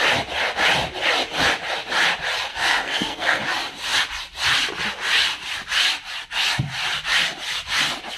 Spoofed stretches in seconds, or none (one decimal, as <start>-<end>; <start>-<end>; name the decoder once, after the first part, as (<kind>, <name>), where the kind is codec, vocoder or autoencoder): 2.5-3.4 (codec, SNAC)